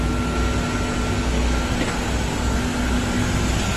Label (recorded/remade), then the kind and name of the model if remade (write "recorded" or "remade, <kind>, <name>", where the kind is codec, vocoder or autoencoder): recorded